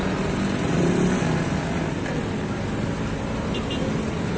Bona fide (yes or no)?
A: yes